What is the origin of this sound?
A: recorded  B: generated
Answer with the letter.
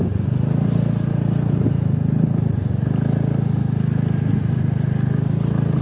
A